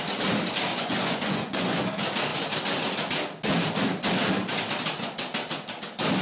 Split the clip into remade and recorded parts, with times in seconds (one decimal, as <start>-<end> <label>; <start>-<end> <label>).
0.0-0.7 recorded; 0.7-1.8 remade; 1.8-6.2 recorded